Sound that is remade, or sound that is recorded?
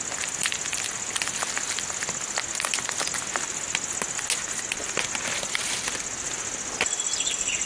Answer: recorded